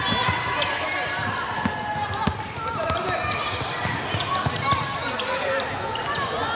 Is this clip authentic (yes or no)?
yes